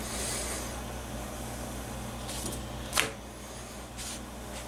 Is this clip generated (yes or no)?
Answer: no